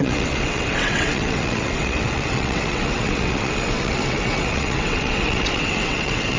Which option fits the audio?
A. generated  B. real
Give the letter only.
A